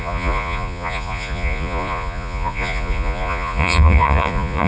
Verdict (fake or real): fake